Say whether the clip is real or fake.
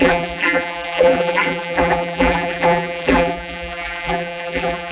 fake